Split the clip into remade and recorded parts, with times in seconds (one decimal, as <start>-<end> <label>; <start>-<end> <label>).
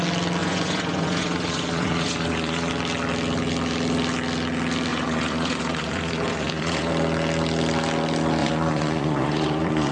0.0-0.4 recorded; 0.4-2.7 remade; 2.7-4.9 recorded; 4.9-6.9 remade; 6.9-8.4 recorded; 8.4-9.9 remade